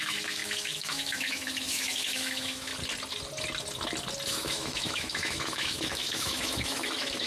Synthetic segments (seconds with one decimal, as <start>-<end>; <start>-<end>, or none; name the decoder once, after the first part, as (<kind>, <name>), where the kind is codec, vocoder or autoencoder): 0.0-2.7 (autoencoder, DAC-VAE); 4.3-7.3